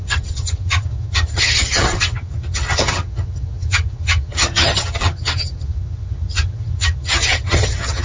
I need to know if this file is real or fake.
fake